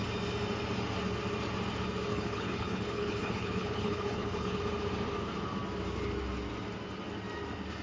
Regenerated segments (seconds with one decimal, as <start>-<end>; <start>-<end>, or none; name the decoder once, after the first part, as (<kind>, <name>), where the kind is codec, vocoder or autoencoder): 2.1-4.6 (codec, HILCodec)